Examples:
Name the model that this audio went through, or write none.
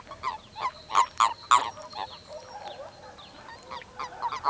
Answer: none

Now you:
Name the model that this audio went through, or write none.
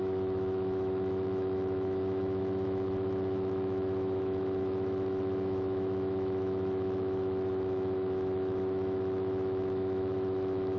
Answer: autoencoder, DAC-VAE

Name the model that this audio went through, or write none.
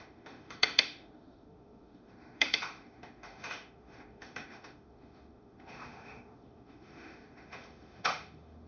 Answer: autoencoder, DAC-VAE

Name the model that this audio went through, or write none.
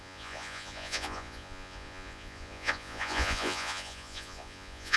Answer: vocoder, Vocos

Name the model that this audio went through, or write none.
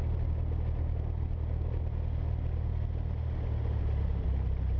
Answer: none